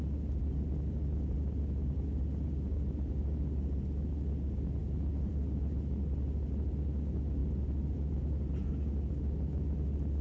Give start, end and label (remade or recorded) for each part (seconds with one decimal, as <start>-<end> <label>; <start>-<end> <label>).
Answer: 0.0-10.2 recorded